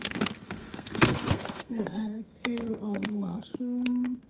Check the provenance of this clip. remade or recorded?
remade